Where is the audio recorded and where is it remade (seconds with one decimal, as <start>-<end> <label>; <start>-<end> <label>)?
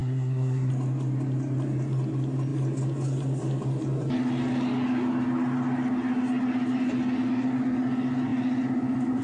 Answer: 0.0-0.7 remade; 0.7-9.2 recorded